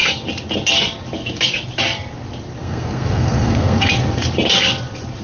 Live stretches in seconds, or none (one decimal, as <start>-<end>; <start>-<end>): 0.0-2.6; 3.9-5.2